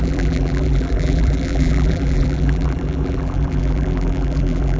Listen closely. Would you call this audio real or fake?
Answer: fake